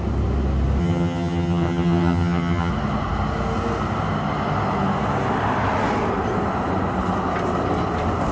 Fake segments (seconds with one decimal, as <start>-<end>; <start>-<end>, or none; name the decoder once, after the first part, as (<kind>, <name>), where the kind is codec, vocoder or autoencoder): 0.8-2.7 (vocoder, HiFi-GAN)